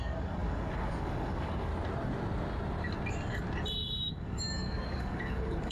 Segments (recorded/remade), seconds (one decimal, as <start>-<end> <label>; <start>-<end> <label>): 0.0-1.7 remade; 1.7-4.1 recorded; 4.1-5.7 remade

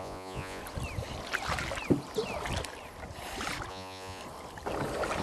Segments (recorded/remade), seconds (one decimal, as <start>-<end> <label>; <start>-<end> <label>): 0.0-0.6 remade; 0.6-3.7 recorded; 3.7-4.2 remade; 4.2-5.2 recorded

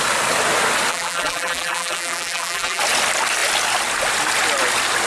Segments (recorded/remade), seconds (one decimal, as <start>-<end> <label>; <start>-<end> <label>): 0.0-0.9 recorded; 0.9-2.8 remade; 2.8-5.1 recorded

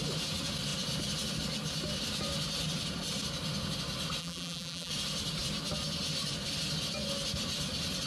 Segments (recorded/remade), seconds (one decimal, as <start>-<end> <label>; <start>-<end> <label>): 0.0-4.2 recorded; 4.2-4.9 remade; 4.9-8.1 recorded